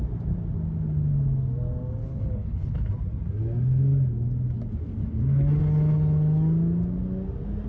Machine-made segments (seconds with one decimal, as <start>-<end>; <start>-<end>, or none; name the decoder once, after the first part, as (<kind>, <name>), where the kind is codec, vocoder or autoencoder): 2.0-2.9 (codec, HILCodec)